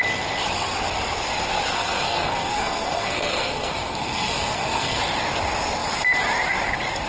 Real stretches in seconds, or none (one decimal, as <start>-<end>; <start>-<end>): 0.0-1.7; 5.0-7.1